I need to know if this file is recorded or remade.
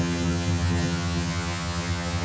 remade